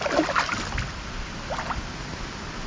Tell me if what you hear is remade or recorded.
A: recorded